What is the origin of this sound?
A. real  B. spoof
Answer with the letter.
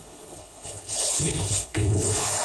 B